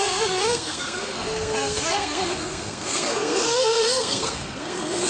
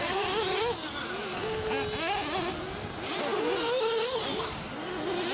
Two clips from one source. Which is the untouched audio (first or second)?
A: second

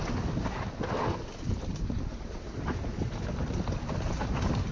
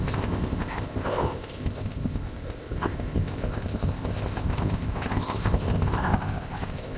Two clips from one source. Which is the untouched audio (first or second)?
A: first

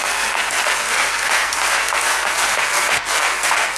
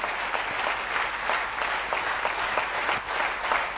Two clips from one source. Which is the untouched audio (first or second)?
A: second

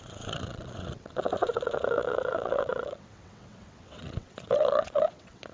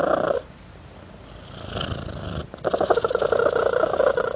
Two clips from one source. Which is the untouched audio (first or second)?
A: second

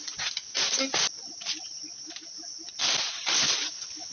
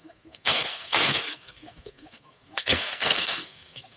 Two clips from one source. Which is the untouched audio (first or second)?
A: first